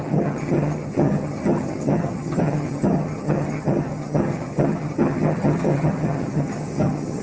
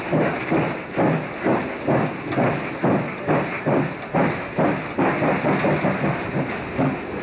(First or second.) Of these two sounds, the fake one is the first